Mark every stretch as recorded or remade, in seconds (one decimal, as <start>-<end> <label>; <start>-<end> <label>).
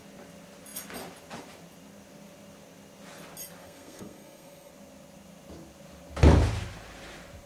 0.0-3.6 recorded; 3.6-4.7 remade; 4.7-7.5 recorded